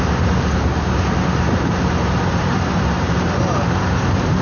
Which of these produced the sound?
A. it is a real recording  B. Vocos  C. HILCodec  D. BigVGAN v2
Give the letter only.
D